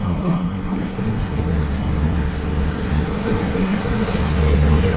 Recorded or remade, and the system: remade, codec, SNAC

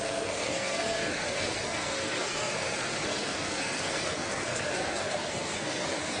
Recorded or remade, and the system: remade, codec, SNAC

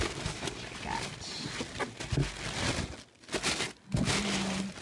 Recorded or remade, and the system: recorded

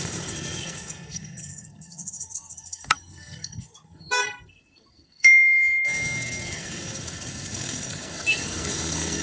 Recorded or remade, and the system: remade, codec, SNAC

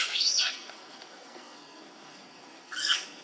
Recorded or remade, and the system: remade, codec, SNAC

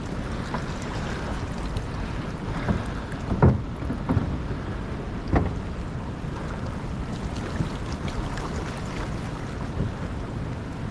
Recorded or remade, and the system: recorded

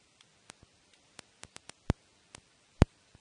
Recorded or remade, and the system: recorded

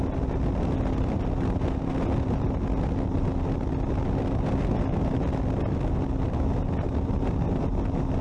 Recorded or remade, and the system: recorded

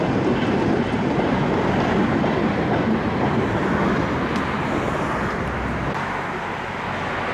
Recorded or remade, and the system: recorded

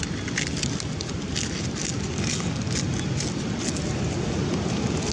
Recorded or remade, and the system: recorded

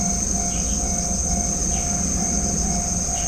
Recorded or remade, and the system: recorded